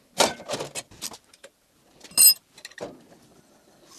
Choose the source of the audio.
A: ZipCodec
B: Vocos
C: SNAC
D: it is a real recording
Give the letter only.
D